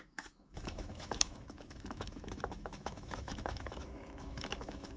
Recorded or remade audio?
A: remade